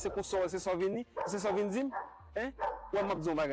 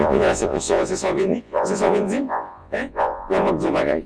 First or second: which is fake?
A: second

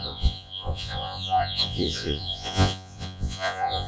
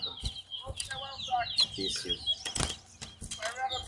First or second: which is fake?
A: first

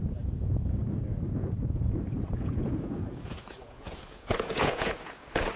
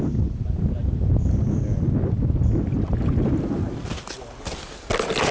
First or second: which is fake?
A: first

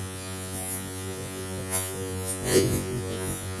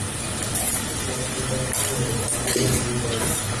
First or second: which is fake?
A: first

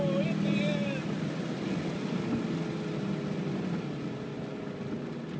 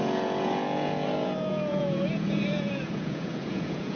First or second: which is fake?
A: second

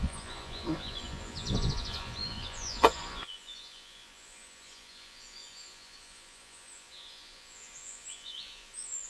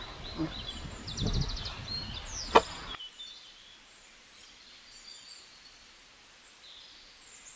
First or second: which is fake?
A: first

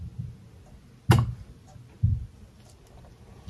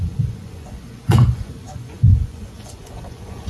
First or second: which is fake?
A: second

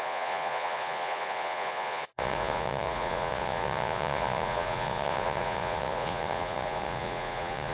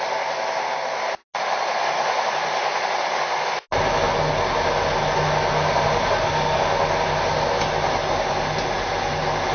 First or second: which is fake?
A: first